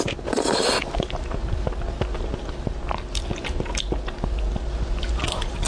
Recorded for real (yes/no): yes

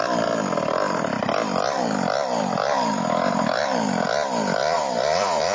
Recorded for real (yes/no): no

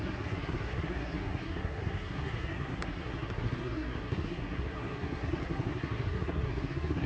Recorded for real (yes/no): no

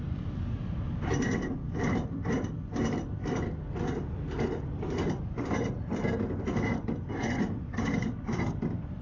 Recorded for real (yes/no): yes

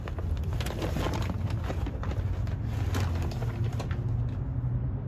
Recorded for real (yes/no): yes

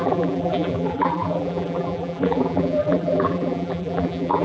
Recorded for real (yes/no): no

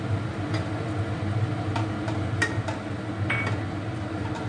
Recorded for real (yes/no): yes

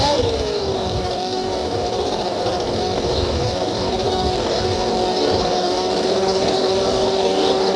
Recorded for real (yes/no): no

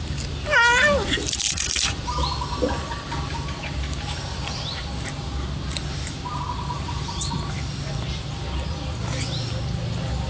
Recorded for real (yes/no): yes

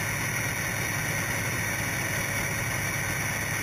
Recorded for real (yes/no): yes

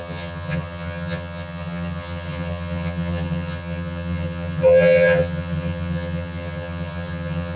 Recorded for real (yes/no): no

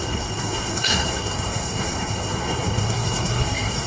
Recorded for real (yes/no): no